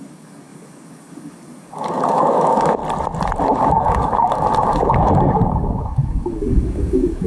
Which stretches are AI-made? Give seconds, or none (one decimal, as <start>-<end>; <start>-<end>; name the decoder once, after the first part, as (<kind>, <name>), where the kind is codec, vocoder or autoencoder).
0.0-2.8 (codec, DAC); 3.4-7.3